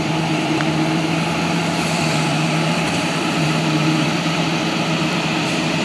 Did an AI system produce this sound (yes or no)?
yes